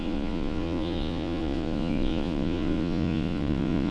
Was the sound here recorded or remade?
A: remade